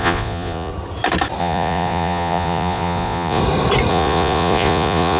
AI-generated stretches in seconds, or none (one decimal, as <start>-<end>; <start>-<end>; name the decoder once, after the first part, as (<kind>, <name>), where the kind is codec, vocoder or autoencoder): 0.0-0.7 (vocoder, Vocos); 1.4-3.4; 3.9-5.2